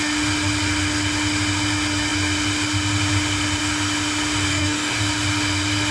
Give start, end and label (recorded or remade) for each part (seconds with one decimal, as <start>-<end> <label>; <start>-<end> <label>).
0.0-4.5 recorded; 4.5-5.0 remade; 5.0-5.9 recorded